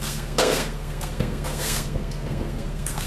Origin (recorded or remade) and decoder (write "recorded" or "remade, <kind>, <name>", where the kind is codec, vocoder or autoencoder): remade, codec, SNAC